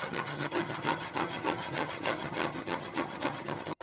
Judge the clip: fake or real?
fake